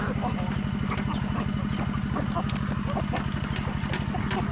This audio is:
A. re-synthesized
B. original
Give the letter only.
B